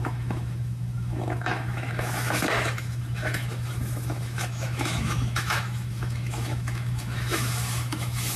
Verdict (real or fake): fake